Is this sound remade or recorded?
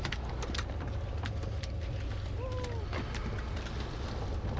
recorded